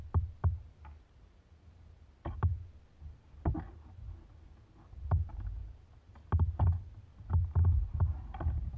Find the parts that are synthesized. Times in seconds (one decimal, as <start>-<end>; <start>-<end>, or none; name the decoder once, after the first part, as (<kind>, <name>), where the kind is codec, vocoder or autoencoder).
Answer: none